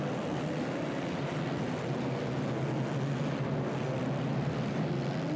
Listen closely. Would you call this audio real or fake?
real